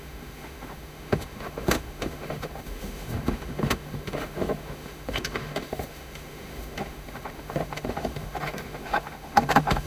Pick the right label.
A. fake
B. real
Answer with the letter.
A